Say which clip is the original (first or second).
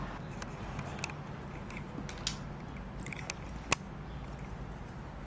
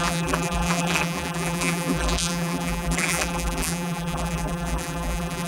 first